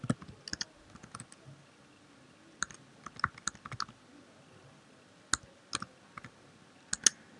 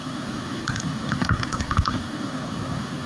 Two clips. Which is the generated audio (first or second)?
second